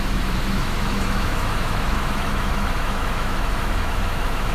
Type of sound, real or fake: fake